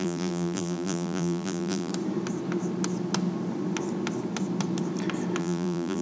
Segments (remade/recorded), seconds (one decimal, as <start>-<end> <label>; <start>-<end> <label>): 0.0-1.9 remade; 1.9-5.4 recorded; 5.4-6.0 remade